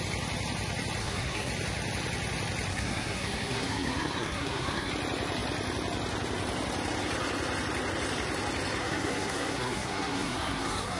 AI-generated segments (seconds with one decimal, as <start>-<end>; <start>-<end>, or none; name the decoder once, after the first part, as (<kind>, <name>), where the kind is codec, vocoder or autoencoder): 1.0-1.5 (codec, SNAC); 2.7-4.9; 8.8-11.0